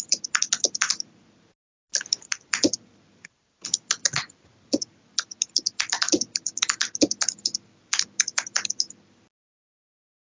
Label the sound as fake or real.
real